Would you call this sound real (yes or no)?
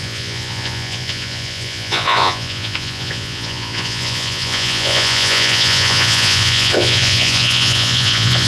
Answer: no